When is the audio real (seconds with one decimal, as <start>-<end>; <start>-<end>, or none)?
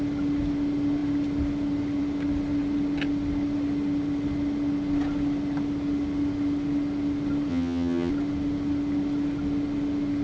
0.0-7.5; 8.1-10.2